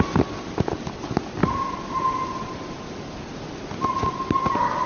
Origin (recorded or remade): recorded